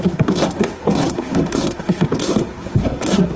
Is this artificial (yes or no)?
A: yes